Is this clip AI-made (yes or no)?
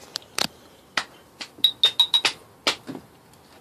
no